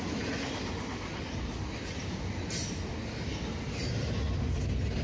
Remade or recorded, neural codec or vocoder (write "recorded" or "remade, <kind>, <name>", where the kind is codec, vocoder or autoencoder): recorded